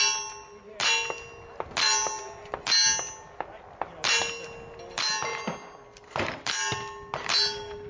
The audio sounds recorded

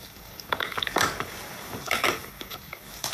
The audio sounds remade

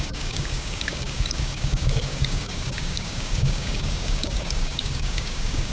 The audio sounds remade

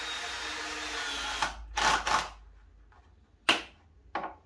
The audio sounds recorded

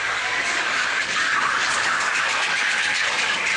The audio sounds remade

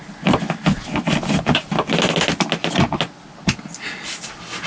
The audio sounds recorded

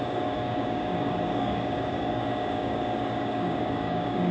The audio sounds remade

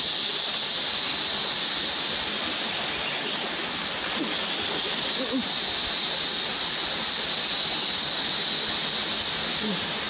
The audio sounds recorded